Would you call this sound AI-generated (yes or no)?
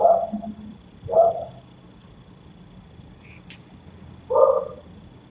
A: no